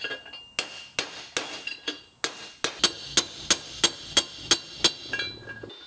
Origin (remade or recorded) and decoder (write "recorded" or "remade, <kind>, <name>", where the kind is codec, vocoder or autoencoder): recorded